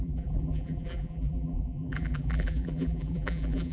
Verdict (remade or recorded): remade